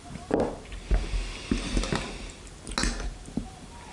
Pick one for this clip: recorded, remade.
recorded